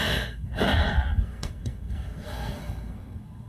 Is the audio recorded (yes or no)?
no